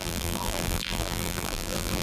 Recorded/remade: remade